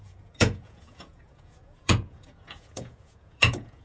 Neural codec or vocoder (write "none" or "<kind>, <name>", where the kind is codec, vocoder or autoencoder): vocoder, Vocos